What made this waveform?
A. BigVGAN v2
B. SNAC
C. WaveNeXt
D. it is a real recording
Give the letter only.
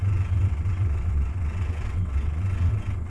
C